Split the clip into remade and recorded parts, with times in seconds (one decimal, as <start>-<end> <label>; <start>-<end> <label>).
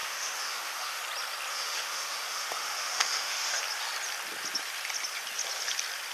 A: 0.0-1.0 remade; 1.0-1.5 recorded; 1.5-3.6 remade; 3.6-6.1 recorded